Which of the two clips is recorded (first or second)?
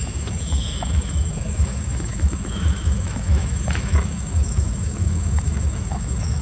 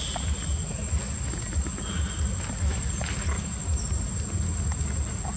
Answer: second